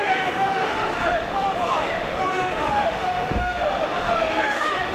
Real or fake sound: fake